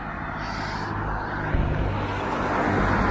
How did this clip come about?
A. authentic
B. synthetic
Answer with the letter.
A